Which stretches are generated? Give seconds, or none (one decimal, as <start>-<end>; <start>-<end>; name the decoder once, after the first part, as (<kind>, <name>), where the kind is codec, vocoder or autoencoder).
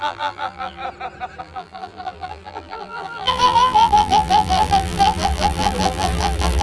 0.0-0.8 (vocoder, BigVGAN v2); 1.4-6.6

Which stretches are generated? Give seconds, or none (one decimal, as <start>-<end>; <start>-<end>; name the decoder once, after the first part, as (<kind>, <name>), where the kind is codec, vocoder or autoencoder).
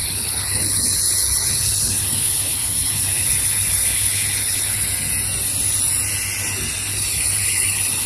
0.0-4.9 (codec, HILCodec); 6.9-8.1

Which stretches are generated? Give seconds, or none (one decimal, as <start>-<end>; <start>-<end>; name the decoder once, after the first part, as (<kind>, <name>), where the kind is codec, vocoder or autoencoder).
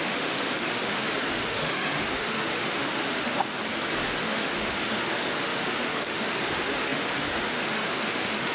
0.0-3.5 (autoencoder, DAC-VAE); 4.2-8.5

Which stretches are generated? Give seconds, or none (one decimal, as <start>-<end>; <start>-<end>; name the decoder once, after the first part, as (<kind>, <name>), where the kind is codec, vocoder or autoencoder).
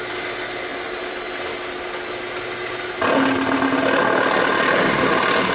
none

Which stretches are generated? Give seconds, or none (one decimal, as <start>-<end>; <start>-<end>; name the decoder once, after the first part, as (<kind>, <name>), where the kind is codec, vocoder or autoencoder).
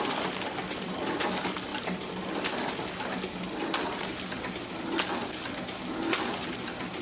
none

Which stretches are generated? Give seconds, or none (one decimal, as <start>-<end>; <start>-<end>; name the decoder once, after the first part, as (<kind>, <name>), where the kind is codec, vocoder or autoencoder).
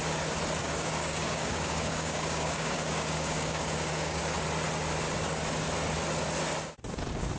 0.6-4.2 (codec, DAC)